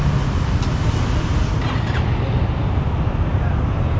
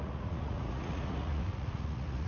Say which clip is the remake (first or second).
second